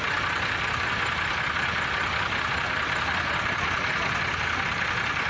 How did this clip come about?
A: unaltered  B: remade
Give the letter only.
A